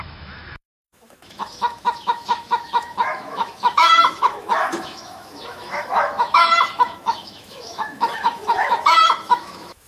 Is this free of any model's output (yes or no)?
no